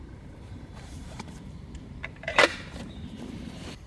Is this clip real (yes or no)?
no